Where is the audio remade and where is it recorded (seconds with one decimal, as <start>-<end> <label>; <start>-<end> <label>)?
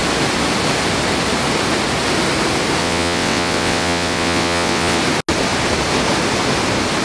0.0-2.8 recorded; 2.8-5.0 remade; 5.0-7.0 recorded